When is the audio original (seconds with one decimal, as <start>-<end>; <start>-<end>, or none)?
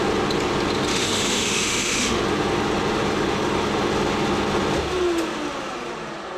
0.0-0.9; 2.2-6.4